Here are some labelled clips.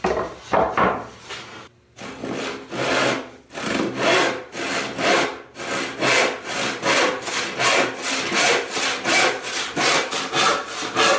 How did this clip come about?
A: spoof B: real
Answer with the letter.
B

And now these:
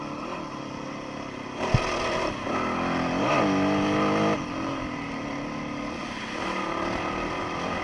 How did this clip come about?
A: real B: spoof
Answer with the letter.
A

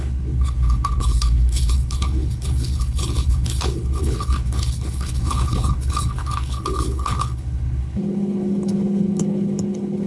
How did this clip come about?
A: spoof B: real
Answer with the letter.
A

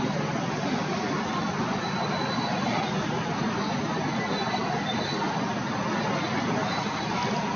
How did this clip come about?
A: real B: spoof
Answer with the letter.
A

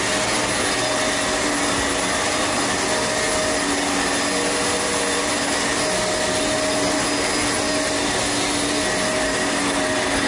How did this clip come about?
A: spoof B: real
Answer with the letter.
B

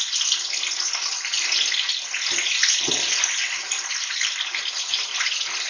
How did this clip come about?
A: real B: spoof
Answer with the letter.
A